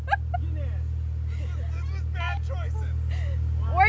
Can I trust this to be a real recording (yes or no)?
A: yes